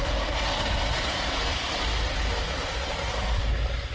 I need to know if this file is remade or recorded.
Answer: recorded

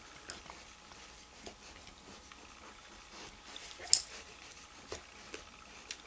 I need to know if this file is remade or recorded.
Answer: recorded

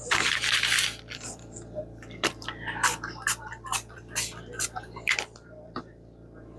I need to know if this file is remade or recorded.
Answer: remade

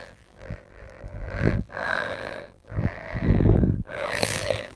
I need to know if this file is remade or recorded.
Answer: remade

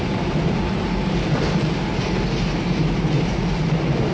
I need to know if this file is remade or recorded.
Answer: remade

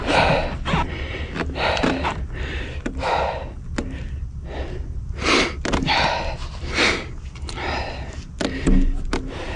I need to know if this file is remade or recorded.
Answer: recorded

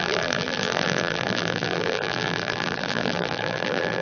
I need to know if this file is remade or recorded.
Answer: remade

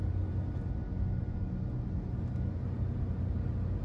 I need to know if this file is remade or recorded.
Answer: recorded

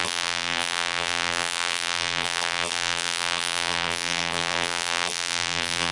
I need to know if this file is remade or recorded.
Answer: remade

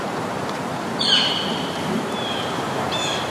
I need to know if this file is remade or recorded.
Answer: remade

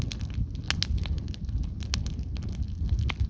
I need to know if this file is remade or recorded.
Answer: recorded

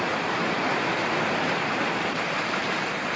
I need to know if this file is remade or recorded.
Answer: remade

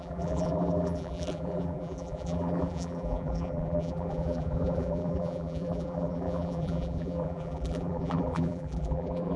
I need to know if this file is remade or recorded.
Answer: remade